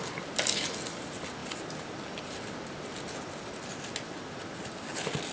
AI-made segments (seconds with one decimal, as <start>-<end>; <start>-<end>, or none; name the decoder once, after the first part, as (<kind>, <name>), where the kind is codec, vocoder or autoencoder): none